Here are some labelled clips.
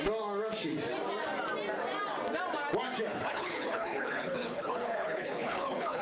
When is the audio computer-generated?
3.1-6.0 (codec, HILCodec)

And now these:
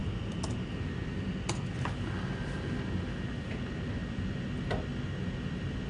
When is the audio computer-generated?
none

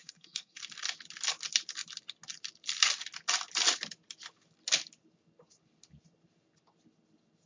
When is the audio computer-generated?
0.0-0.6 (codec, SNAC)